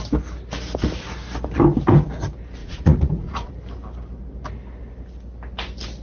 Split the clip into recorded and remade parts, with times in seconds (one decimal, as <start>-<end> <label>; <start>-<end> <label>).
0.0-2.6 recorded; 2.6-3.5 remade; 3.5-6.0 recorded